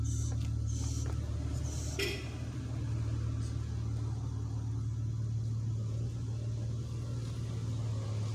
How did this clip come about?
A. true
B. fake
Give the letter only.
A